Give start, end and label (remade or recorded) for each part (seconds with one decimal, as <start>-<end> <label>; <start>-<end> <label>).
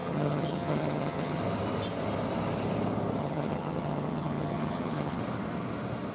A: 0.0-1.4 remade; 1.4-3.2 recorded; 3.2-5.2 remade; 5.2-6.1 recorded